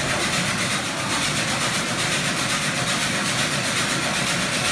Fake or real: real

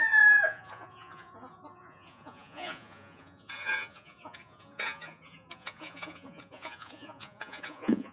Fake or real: fake